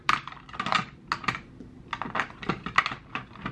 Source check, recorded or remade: recorded